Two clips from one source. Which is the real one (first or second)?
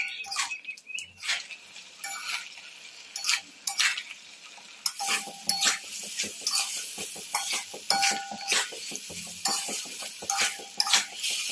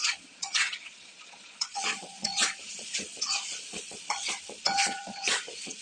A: first